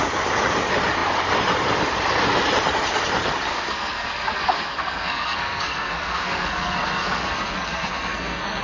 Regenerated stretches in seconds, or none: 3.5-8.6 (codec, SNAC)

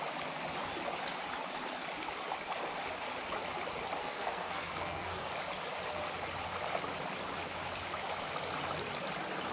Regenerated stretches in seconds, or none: 4.0-5.3 (codec, SNAC)

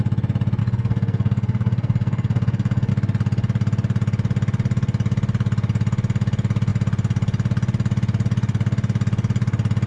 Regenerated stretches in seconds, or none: 0.6-2.9 (codec, SNAC)

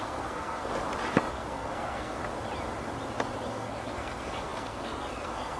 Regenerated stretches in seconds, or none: 0.0-0.7 (codec, SNAC); 1.3-2.2; 3.5-5.6

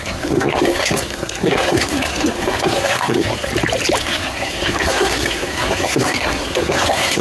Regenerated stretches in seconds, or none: 0.0-3.5 (codec, SNAC); 4.0-7.2